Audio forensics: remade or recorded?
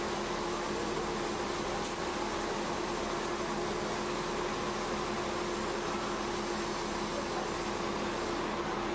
recorded